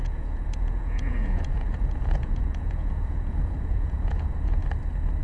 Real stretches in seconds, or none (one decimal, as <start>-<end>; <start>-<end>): 4.6-5.2